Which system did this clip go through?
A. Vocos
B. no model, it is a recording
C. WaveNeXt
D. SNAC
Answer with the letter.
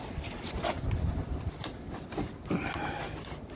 B